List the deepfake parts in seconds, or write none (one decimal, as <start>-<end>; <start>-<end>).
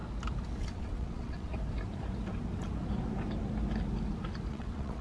0.6-1.5; 4.5-5.0